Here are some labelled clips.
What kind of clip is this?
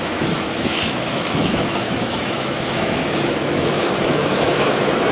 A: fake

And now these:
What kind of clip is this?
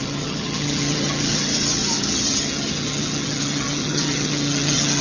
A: fake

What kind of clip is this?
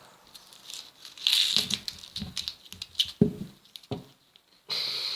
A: real